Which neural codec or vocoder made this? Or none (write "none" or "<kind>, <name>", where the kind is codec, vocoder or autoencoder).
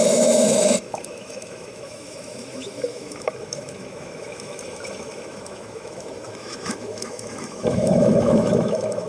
autoencoder, DAC-VAE